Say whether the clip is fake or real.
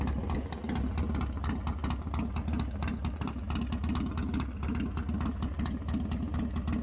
real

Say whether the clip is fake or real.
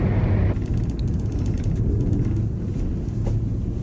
real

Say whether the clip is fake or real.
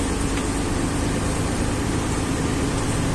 real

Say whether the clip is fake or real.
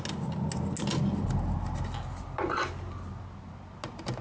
real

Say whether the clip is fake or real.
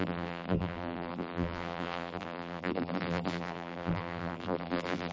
fake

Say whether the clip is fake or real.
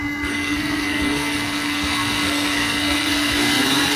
fake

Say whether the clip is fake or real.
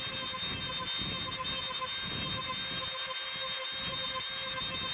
real